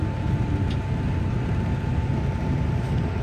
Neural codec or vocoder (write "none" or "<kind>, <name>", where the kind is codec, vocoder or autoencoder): none